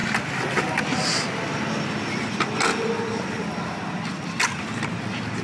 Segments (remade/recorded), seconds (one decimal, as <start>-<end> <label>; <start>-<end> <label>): 0.0-1.6 remade; 1.6-2.7 recorded; 2.7-4.6 remade; 4.6-5.4 recorded